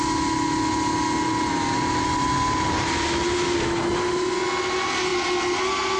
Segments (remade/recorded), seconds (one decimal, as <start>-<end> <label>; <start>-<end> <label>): 0.0-6.0 recorded